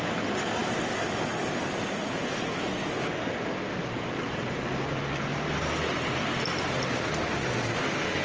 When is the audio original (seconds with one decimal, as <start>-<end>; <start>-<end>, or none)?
0.0-8.2